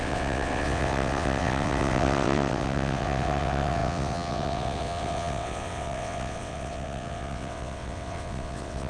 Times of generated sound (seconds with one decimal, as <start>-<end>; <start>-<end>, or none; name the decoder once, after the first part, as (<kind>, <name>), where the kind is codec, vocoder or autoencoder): 0.0-8.9 (vocoder, WaveNeXt)